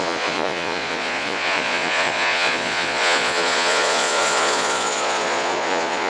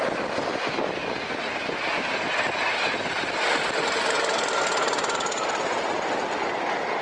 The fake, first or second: first